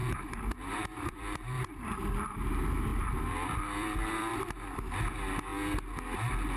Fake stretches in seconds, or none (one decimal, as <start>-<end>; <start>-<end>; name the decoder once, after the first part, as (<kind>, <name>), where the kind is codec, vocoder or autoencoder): 0.0-2.5 (vocoder, BigVGAN v2); 2.9-4.4